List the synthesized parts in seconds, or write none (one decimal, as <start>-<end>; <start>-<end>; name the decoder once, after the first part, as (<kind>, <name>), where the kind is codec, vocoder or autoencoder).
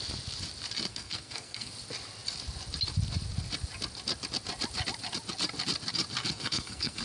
0.9-1.7 (codec, SNAC); 6.2-7.0